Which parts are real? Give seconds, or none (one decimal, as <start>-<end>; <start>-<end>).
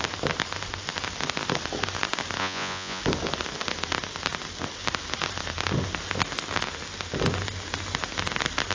0.0-2.4; 3.0-8.7